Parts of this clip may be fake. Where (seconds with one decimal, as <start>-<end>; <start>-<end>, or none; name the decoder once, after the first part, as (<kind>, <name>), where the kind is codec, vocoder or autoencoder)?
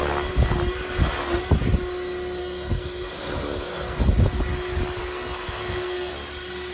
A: 2.4-4.0 (codec, SNAC); 5.0-6.1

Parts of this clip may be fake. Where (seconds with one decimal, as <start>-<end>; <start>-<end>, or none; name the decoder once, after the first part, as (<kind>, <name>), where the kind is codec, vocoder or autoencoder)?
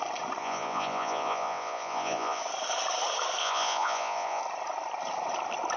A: 0.4-2.4 (vocoder, Vocos); 3.4-4.4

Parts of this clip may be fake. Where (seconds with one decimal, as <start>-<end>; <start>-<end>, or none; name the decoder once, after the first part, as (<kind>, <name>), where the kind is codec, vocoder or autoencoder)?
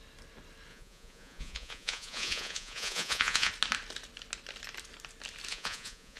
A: 0.7-3.5 (vocoder, Vocos); 5.5-6.2